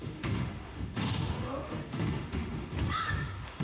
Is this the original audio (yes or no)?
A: no